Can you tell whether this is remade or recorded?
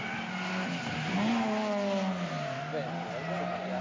recorded